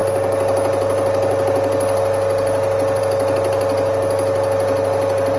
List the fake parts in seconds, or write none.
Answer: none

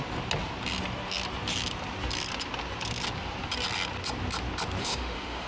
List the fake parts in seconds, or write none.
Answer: 4.8-5.5 (autoencoder, DAC-VAE)

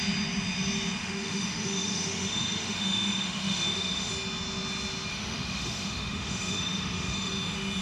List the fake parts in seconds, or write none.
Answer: 1.0-4.1 (autoencoder, DAC-VAE); 5.1-7.3

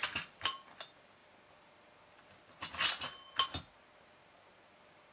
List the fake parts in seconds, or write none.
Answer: none

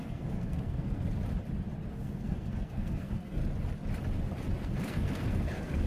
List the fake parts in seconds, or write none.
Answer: 0.0-1.1 (codec, SNAC); 1.9-3.4; 4.6-5.9

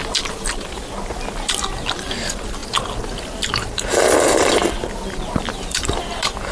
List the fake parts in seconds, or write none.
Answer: none

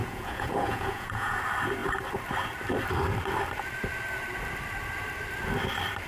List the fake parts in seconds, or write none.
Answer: 0.0-1.4 (vocoder, Vocos)